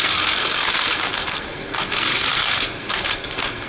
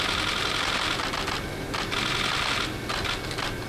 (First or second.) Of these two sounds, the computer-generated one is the first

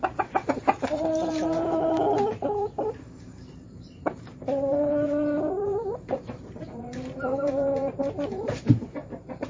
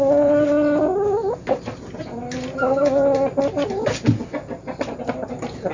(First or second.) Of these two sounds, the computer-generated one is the first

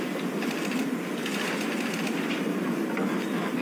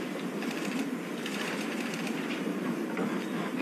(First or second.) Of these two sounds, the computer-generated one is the second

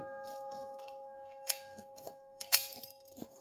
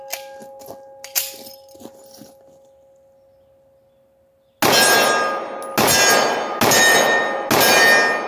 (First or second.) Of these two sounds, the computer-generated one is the first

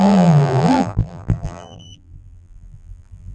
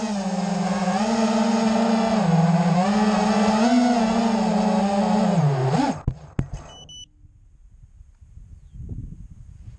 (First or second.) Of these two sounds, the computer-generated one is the first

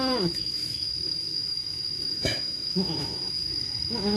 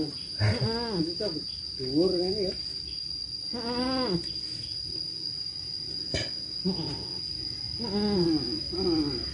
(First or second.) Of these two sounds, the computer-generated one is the first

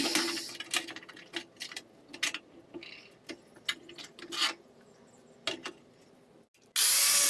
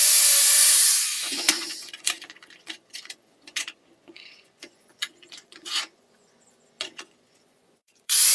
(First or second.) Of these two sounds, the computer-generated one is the second